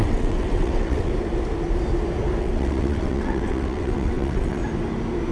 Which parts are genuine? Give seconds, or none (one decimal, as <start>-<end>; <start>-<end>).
1.1-2.4; 4.6-5.3